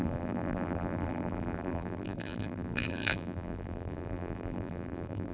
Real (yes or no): no